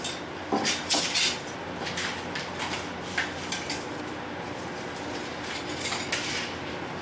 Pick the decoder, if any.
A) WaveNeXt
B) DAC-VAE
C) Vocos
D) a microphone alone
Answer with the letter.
D